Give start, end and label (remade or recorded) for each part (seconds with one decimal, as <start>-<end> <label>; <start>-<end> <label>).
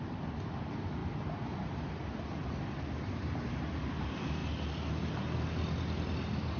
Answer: 0.0-6.6 recorded